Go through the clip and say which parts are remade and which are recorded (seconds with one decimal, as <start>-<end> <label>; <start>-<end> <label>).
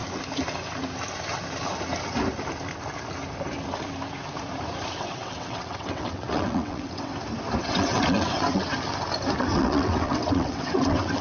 0.0-5.0 recorded; 5.0-7.1 remade; 7.1-7.6 recorded; 7.6-8.7 remade; 8.7-9.4 recorded; 9.4-11.2 remade